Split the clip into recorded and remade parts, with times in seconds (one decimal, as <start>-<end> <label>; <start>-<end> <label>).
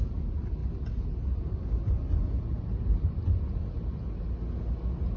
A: 0.0-5.2 recorded